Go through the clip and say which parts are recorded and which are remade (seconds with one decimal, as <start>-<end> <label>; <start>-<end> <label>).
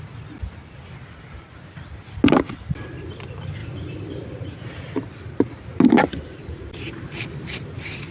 0.0-8.1 recorded